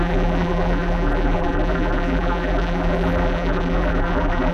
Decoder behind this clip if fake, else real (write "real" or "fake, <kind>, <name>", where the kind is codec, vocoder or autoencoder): fake, vocoder, BigVGAN v2